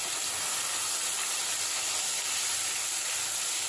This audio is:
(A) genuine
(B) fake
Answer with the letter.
A